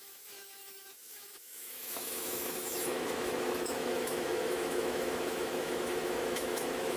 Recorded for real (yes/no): no